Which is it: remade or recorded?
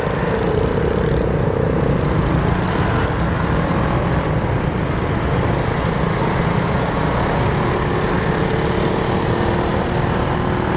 recorded